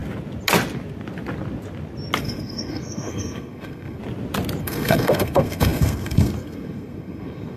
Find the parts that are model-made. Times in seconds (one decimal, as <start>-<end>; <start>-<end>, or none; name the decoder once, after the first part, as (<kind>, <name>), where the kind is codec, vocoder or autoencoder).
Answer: 2.2-4.0 (codec, SNAC); 4.6-7.6